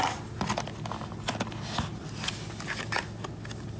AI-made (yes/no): no